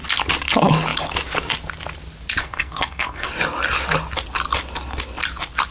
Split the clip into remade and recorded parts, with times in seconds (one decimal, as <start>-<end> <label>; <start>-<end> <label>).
0.0-2.4 recorded; 2.4-3.3 remade; 3.3-5.7 recorded